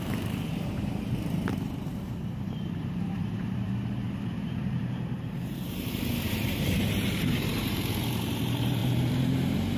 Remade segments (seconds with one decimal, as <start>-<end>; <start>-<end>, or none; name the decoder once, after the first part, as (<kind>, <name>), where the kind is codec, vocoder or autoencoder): 0.0-9.8 (vocoder, BigVGAN v2)